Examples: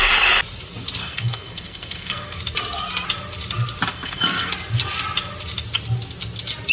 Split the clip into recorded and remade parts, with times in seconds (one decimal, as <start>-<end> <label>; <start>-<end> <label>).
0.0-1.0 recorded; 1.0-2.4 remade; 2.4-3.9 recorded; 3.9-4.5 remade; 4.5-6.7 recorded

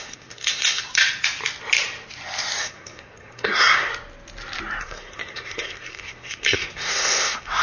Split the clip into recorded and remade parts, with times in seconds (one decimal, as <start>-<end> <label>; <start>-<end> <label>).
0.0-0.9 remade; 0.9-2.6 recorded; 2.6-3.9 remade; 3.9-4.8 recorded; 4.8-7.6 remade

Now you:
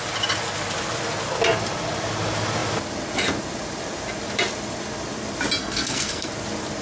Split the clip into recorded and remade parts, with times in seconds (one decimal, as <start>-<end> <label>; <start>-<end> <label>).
0.0-5.6 recorded; 5.6-6.3 remade; 6.3-6.8 recorded